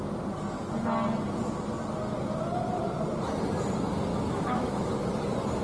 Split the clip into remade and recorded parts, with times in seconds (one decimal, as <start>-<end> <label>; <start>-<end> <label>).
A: 0.0-4.1 recorded; 4.1-4.9 remade; 4.9-5.6 recorded